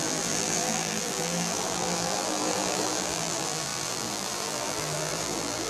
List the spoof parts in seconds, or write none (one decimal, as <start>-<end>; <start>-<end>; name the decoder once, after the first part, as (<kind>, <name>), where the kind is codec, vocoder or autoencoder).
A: 0.0-5.7 (vocoder, BigVGAN v2)